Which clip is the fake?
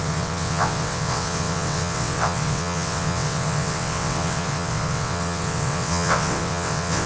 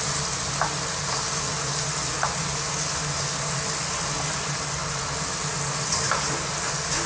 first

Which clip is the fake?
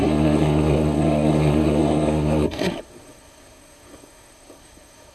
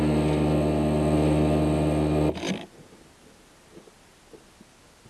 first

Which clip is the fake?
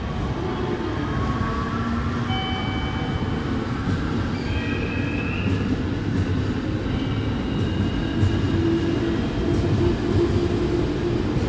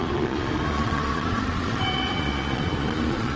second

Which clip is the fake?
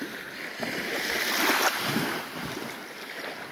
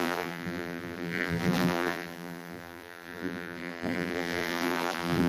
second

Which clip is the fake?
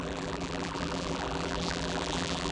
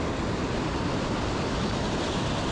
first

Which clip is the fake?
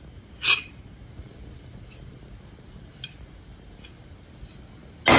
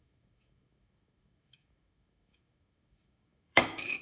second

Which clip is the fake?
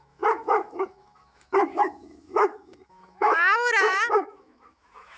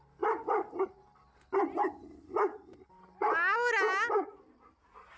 first